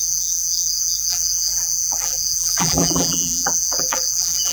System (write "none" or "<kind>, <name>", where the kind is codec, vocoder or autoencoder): vocoder, BigVGAN v2